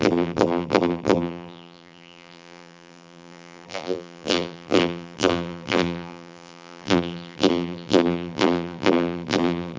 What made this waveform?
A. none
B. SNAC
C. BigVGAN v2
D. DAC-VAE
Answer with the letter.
C